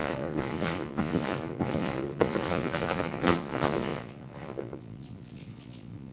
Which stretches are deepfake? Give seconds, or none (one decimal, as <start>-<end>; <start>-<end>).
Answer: 0.0-6.1